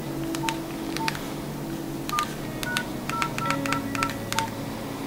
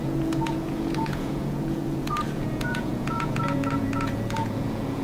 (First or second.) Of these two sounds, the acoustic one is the first